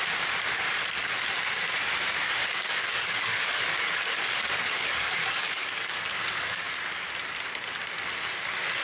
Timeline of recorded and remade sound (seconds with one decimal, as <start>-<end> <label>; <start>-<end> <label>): 0.0-2.4 recorded; 2.4-6.7 remade; 6.7-8.8 recorded